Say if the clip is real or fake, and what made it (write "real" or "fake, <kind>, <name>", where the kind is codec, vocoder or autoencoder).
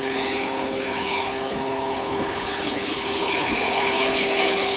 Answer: fake, codec, HILCodec